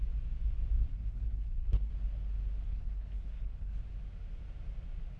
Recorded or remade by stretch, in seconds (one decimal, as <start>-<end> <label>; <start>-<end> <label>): 0.0-0.9 recorded; 0.9-1.9 remade; 1.9-2.7 recorded; 2.7-3.8 remade; 3.8-5.2 recorded